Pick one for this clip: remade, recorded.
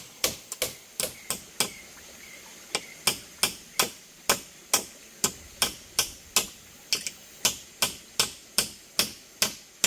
recorded